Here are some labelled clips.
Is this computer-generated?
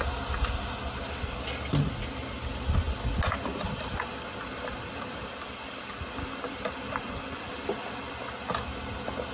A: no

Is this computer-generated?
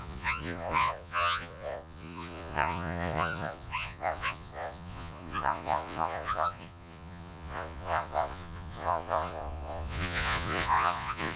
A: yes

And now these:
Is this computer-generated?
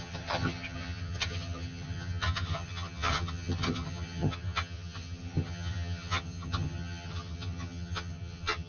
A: yes